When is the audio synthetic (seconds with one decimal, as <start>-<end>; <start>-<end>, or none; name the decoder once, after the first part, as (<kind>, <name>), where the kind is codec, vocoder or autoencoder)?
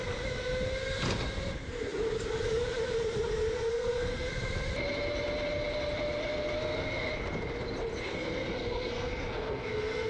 3.7-4.3 (codec, SNAC); 6.6-7.1; 8.1-10.1